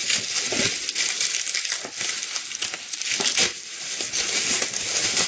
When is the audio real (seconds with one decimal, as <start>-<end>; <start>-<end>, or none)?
0.0-2.7; 4.0-5.3

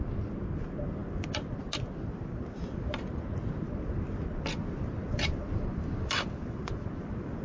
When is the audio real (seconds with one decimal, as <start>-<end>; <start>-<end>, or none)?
0.0-5.4

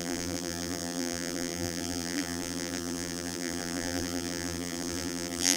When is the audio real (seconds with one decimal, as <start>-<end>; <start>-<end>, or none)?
none

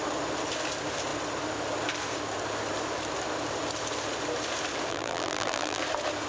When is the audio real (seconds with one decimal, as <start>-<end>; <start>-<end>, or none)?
0.0-4.9; 5.8-6.3

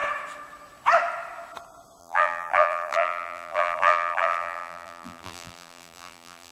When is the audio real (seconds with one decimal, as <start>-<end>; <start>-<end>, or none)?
0.0-2.0

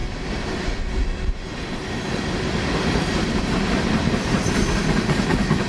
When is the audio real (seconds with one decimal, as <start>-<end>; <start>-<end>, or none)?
0.0-3.4

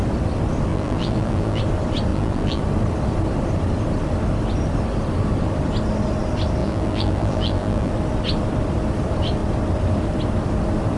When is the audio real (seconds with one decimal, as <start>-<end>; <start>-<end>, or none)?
0.0-0.7; 1.6-2.1; 2.6-6.6; 7.9-11.0

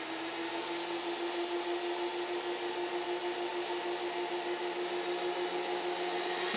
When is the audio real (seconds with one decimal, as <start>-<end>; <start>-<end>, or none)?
0.0-6.6